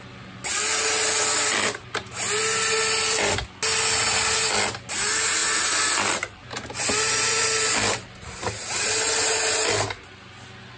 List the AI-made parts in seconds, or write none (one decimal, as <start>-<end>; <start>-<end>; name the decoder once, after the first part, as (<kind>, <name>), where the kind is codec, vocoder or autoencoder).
none